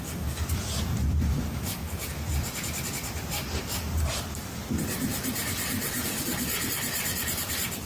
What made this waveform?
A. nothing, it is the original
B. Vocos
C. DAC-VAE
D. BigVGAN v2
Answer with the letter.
D